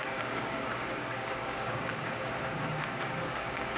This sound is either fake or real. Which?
fake